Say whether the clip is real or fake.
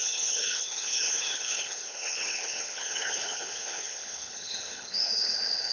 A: fake